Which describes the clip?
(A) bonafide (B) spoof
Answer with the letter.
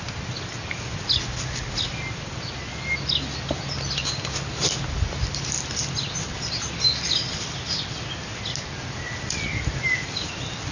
A